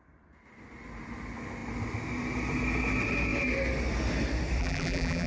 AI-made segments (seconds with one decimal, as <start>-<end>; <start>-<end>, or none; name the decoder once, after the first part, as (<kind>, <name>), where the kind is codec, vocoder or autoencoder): 4.6-5.3 (vocoder, BigVGAN v2)